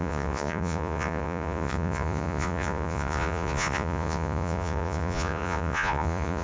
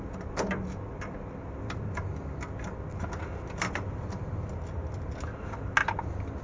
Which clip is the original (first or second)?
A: second